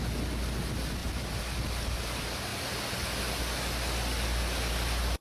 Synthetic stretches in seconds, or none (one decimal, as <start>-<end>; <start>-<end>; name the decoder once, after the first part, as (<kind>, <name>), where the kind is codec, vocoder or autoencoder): none